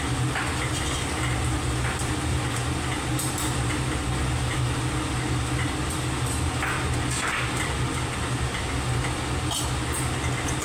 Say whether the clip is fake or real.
real